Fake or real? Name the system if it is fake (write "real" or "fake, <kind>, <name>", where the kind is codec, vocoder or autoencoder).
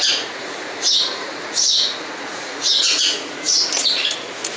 fake, vocoder, Vocos